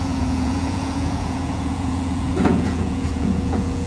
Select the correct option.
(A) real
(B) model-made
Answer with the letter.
B